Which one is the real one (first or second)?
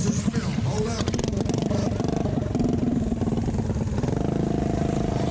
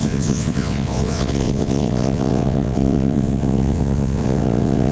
first